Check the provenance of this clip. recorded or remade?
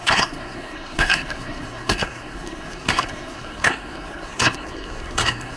remade